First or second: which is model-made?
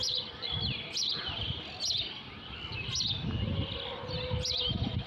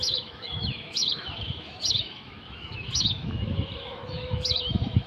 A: second